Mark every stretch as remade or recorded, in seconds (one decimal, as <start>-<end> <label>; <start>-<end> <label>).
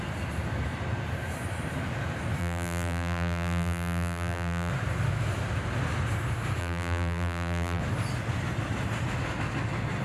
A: 0.0-2.4 recorded; 2.4-4.7 remade; 4.7-6.6 recorded; 6.6-7.8 remade; 7.8-10.0 recorded